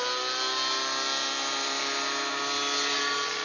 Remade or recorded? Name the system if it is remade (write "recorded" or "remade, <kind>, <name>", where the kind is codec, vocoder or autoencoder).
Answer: recorded